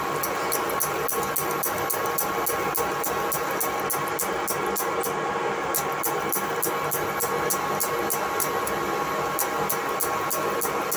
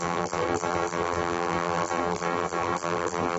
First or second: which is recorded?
first